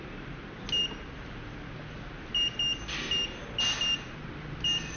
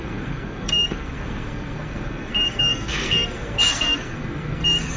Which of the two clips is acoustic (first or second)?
first